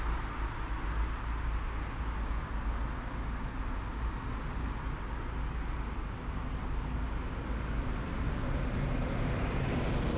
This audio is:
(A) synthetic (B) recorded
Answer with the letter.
B